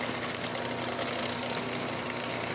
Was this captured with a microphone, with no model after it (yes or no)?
yes